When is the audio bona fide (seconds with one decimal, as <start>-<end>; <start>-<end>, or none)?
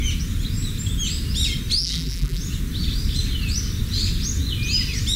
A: 0.0-1.8; 2.4-5.2